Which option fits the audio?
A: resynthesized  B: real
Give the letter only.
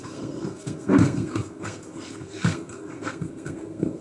A